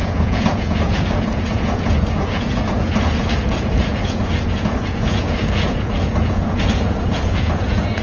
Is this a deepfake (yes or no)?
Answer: yes